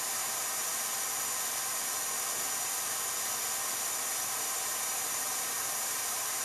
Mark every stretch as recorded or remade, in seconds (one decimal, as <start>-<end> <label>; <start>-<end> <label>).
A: 0.0-0.6 remade; 0.6-4.4 recorded; 4.4-6.4 remade